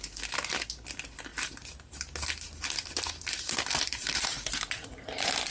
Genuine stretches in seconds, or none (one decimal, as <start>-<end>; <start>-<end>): 0.0-5.5